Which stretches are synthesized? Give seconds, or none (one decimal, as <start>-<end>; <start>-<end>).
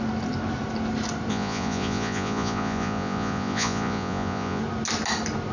1.3-4.6